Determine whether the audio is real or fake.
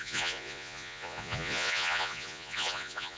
fake